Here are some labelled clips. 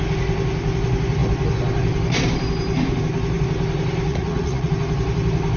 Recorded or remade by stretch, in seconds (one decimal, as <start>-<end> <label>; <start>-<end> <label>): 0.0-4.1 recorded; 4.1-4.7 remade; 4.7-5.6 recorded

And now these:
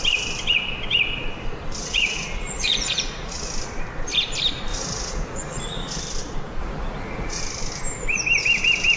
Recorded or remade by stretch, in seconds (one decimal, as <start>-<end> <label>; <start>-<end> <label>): 0.0-1.8 recorded; 1.8-3.5 remade; 3.5-4.7 recorded; 4.7-6.0 remade; 6.0-6.6 recorded; 6.6-7.4 remade; 7.4-9.0 recorded

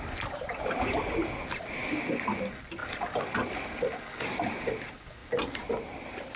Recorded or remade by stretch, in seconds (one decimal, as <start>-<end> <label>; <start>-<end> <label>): 0.0-6.4 recorded

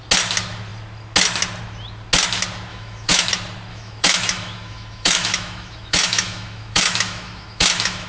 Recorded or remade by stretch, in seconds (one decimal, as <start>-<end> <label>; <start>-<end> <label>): 0.0-2.7 recorded; 2.7-3.3 remade; 3.3-3.7 recorded; 3.7-8.1 remade

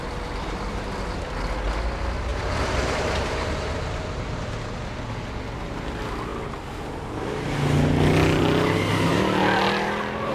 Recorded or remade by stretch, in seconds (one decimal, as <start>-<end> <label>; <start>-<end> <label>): 0.0-2.3 recorded; 2.3-5.1 remade; 5.1-10.3 recorded